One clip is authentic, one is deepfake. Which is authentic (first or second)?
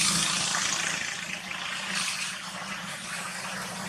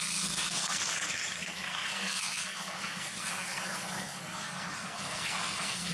first